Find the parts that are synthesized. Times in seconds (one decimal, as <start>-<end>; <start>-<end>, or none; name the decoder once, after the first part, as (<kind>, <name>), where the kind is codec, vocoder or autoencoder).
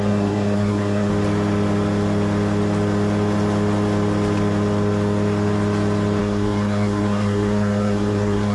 0.0-1.1 (codec, SNAC); 6.2-8.5